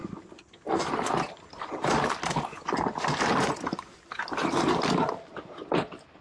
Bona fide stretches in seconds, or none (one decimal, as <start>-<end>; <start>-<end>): 0.0-6.2